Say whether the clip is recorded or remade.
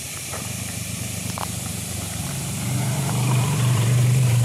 remade